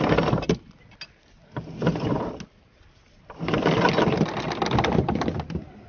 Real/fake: real